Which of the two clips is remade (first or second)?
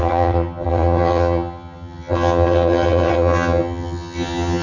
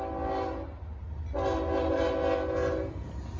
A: first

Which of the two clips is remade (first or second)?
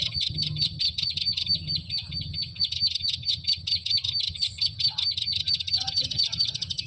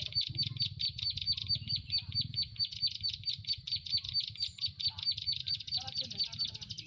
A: first